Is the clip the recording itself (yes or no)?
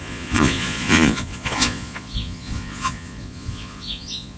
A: no